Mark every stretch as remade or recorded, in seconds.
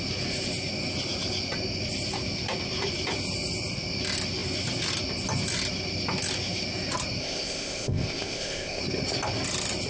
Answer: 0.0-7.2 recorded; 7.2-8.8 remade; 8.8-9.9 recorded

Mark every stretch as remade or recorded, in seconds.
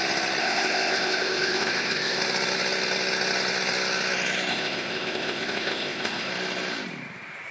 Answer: 0.0-0.4 recorded; 0.4-2.2 remade; 2.2-4.5 recorded; 4.5-6.3 remade; 6.3-7.5 recorded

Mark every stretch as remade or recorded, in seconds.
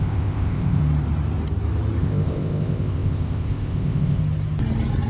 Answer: 0.0-0.8 remade; 0.8-2.0 recorded; 2.0-4.2 remade; 4.2-5.1 recorded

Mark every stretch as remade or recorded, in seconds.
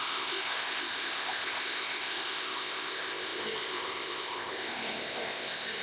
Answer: 0.0-5.8 remade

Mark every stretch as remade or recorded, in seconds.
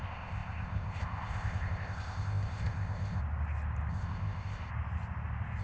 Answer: 0.0-3.2 remade; 3.2-3.9 recorded; 3.9-4.7 remade; 4.7-5.6 recorded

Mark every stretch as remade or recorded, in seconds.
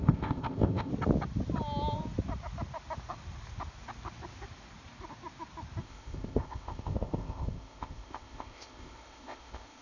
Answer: 0.0-0.9 remade; 0.9-5.8 recorded; 5.8-9.8 remade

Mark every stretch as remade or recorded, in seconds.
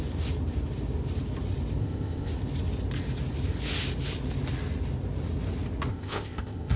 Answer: 0.0-1.8 recorded; 1.8-2.3 remade; 2.3-5.9 recorded; 5.9-6.8 remade